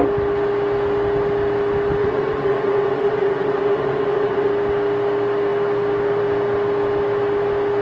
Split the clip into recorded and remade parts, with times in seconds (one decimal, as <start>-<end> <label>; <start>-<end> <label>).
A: 0.0-2.0 recorded; 2.0-4.5 remade; 4.5-7.8 recorded